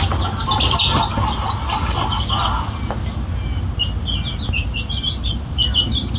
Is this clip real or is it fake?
real